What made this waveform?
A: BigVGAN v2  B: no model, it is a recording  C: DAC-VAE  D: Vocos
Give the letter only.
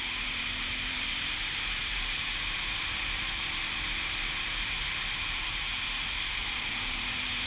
A